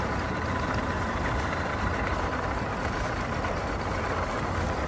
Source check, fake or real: fake